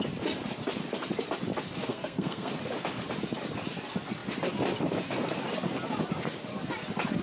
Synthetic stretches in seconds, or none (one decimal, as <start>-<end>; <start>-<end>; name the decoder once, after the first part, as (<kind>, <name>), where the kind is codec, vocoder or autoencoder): 1.9-2.5 (codec, SNAC)

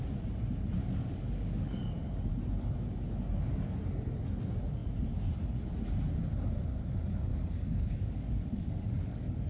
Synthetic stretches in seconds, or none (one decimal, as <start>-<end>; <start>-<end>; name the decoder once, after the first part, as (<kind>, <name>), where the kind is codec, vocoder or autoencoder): 0.8-2.3 (codec, DAC); 7.3-9.5

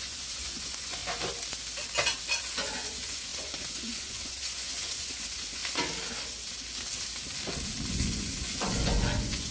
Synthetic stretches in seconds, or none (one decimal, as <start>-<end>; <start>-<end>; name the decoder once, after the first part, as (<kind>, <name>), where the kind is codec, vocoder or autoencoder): 0.0-1.0 (vocoder, Vocos); 2.4-5.6; 7.9-9.5